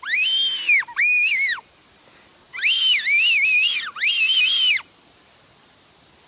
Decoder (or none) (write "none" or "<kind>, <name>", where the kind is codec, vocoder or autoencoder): none